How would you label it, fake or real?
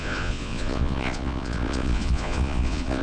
fake